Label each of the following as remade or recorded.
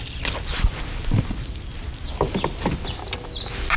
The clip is recorded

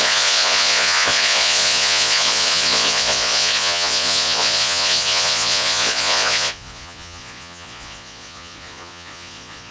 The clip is remade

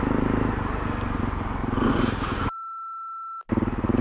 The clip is recorded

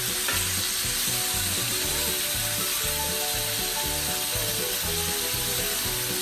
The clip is recorded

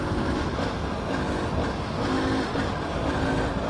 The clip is recorded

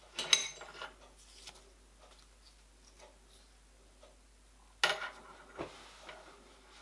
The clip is recorded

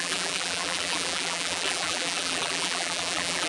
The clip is remade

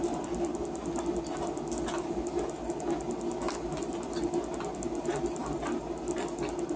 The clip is recorded